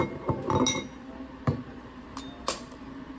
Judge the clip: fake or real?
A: real